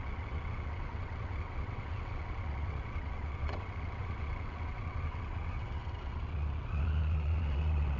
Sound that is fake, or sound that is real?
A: fake